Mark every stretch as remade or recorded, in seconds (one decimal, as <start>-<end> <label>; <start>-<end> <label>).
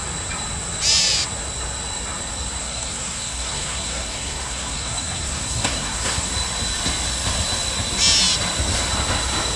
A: 0.0-2.6 recorded; 2.6-6.3 remade; 6.3-9.6 recorded